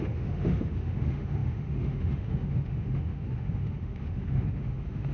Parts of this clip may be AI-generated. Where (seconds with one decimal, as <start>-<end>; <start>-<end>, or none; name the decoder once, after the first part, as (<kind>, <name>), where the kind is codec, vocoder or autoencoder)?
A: 0.0-5.1 (autoencoder, DAC-VAE)